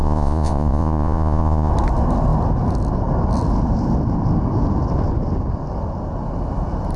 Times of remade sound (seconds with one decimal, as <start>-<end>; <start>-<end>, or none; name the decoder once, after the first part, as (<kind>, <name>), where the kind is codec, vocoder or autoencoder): 0.0-1.7 (vocoder, Vocos)